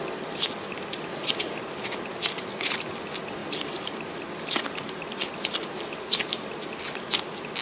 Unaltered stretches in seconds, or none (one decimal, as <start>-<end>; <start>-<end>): 0.0-7.6